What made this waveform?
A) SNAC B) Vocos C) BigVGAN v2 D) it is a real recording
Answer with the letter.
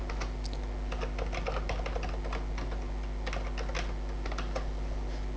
D